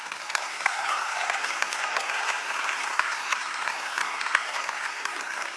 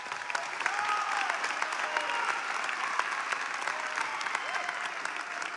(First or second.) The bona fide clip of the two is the second